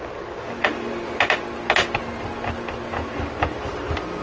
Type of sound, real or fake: real